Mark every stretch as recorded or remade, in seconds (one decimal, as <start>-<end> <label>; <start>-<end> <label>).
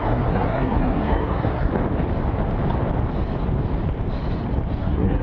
0.0-1.7 remade; 1.7-4.8 recorded; 4.8-5.2 remade